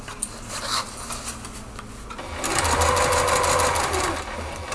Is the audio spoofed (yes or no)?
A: no